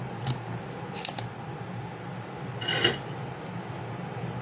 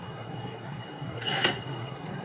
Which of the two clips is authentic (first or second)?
first